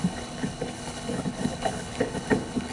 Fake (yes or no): yes